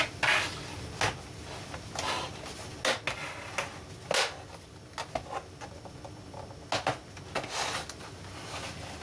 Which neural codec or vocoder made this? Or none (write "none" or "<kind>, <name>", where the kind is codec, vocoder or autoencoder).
none